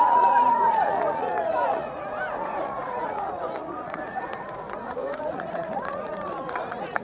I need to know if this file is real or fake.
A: fake